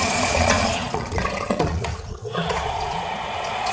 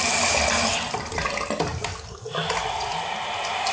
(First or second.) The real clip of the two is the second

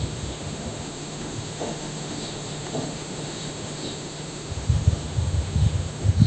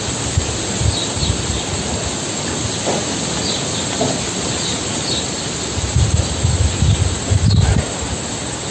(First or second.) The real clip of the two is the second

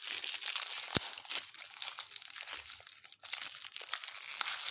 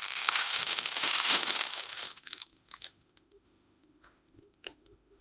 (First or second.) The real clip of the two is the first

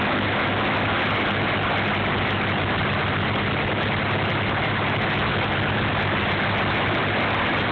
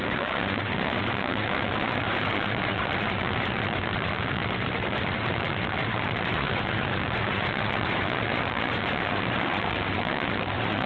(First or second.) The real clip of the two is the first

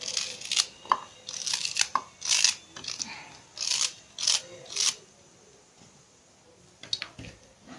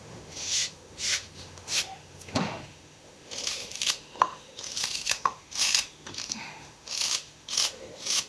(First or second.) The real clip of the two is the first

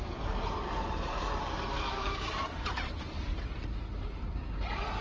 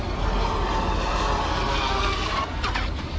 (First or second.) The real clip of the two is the second